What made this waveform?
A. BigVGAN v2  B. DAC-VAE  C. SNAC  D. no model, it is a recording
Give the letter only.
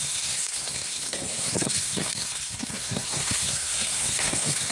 C